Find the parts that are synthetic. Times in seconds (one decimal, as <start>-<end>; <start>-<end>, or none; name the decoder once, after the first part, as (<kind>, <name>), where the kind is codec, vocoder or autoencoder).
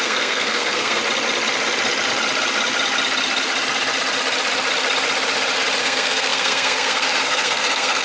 0.0-1.0 (codec, SNAC); 5.8-8.0